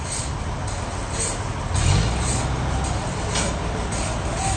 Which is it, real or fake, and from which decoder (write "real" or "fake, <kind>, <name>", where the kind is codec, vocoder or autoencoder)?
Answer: real